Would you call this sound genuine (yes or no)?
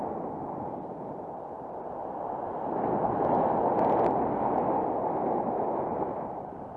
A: yes